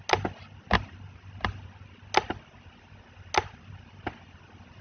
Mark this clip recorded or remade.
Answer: recorded